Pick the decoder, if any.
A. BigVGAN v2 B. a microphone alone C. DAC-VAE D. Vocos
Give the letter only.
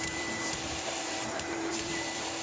A